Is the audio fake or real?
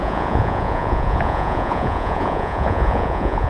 fake